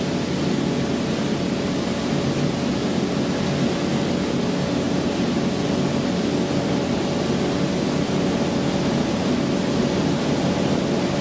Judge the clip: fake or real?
real